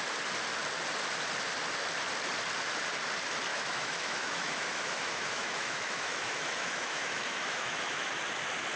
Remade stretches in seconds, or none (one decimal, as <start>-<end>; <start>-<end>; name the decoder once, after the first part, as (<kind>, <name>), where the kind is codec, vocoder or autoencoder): 3.5-8.1 (autoencoder, DAC-VAE)